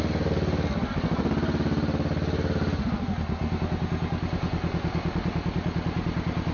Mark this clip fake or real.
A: real